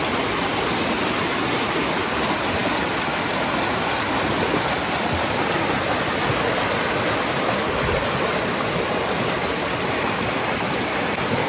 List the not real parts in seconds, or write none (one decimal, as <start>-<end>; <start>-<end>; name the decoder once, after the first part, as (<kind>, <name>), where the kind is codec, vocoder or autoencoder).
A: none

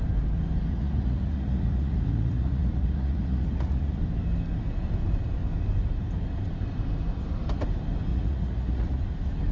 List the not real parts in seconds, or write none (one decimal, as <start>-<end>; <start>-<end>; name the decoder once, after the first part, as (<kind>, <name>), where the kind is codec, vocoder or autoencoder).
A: 0.7-4.0 (vocoder, Vocos); 8.1-9.0

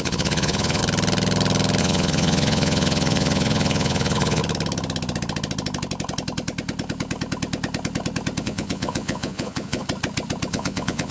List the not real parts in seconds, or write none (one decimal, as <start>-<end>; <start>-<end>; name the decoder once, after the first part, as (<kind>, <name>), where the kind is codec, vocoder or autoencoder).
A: 0.0-0.8 (vocoder, Vocos); 1.8-4.4; 8.4-9.8; 10.5-11.1

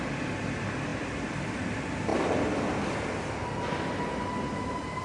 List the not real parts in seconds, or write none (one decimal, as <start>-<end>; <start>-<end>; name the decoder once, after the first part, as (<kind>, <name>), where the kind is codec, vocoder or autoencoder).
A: none

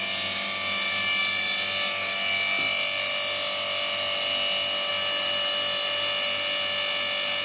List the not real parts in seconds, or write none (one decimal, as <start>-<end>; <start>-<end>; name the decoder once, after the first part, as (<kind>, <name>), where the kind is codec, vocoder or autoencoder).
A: none

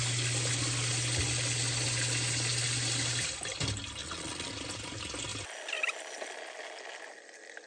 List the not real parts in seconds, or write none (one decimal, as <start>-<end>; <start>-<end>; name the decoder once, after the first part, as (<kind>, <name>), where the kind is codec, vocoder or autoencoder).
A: 4.0-4.5 (vocoder, Vocos)